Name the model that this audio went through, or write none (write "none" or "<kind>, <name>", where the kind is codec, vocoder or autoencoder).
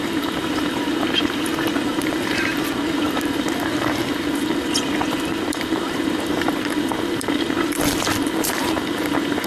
vocoder, BigVGAN v2